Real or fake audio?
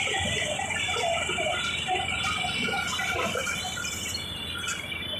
real